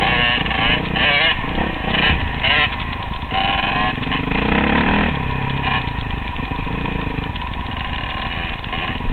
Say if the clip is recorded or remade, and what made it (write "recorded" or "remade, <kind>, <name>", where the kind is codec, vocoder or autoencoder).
recorded